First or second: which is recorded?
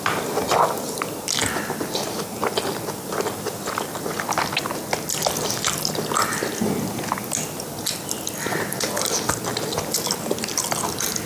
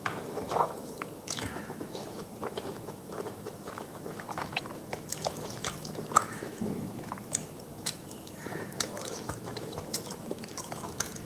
first